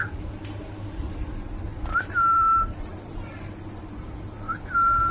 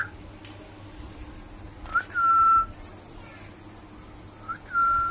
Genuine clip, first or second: second